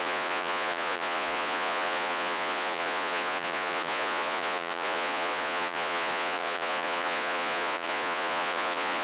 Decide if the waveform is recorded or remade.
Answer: remade